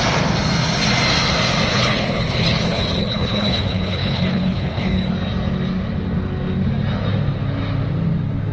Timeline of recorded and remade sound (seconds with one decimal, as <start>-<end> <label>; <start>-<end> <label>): 0.0-1.7 recorded; 1.7-5.1 remade; 5.1-8.5 recorded